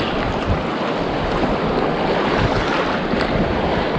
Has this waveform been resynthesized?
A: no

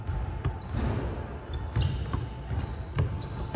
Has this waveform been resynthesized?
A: no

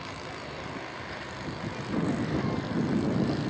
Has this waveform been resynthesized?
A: no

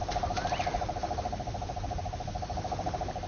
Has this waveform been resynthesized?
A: no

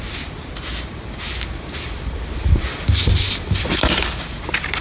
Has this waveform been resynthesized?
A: no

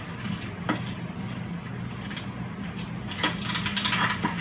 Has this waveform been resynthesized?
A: no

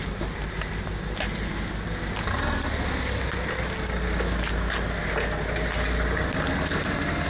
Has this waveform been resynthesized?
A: no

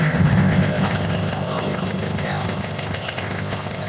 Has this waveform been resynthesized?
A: yes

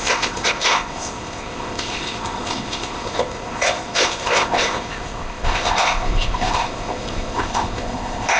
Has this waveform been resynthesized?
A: yes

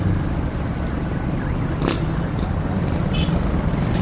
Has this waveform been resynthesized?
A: no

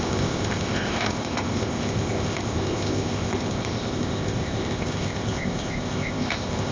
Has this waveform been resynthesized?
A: yes